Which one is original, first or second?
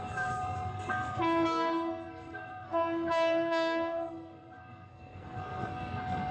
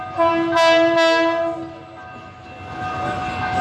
second